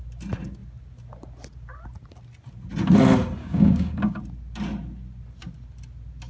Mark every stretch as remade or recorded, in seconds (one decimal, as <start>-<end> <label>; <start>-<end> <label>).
0.0-3.4 recorded; 3.4-4.2 remade; 4.2-6.3 recorded